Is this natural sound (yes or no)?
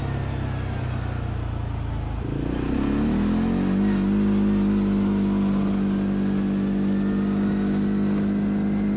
yes